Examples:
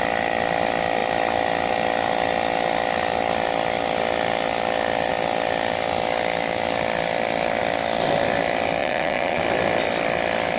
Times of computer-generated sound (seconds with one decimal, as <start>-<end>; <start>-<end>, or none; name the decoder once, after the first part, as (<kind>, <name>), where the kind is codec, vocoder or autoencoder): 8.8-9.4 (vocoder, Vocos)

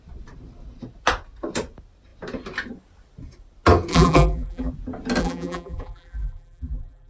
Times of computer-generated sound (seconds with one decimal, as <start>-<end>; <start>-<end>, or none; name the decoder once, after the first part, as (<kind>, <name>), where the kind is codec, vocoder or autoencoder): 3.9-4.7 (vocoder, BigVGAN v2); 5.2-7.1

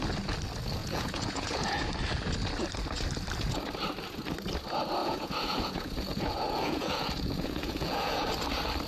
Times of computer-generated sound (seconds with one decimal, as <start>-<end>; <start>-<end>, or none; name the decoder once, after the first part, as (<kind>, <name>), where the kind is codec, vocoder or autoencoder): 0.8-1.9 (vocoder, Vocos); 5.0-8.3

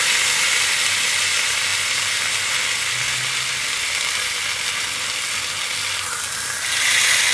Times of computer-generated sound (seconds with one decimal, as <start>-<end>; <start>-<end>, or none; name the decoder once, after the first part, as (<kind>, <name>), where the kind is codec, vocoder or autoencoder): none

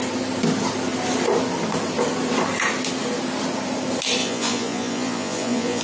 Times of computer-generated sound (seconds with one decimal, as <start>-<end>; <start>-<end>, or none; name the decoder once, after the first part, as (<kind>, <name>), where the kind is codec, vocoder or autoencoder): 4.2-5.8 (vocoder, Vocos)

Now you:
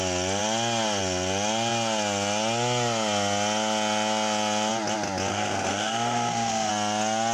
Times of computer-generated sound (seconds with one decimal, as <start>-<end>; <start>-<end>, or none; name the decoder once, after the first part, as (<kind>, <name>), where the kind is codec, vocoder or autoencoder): 5.3-6.7 (codec, SNAC)

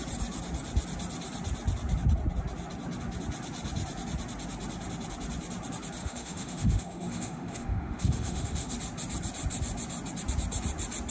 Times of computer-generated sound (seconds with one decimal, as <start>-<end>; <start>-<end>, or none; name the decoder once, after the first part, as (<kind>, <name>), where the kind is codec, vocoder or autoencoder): 6.0-8.7 (autoencoder, DAC-VAE)